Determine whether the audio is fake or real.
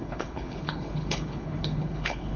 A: fake